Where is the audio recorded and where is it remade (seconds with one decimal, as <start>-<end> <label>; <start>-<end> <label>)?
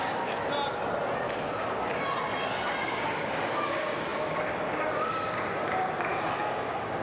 0.0-0.4 remade; 0.4-2.8 recorded; 2.8-7.0 remade